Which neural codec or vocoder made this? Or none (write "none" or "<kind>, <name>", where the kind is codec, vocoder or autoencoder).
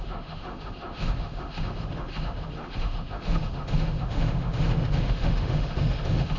autoencoder, DAC-VAE